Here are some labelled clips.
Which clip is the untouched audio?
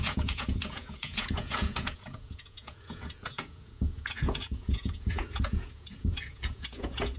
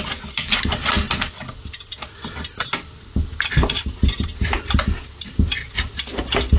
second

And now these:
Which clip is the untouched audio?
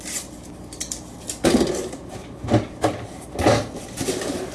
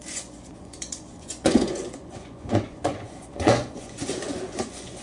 first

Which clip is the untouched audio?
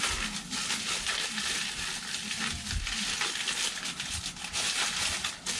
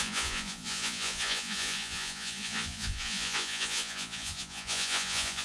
first